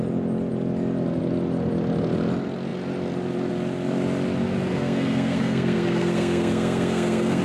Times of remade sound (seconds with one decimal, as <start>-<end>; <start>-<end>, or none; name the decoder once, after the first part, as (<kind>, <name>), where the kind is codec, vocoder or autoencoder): 4.7-7.4 (codec, SNAC)